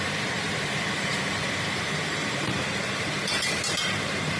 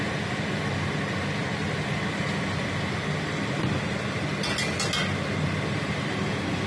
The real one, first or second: second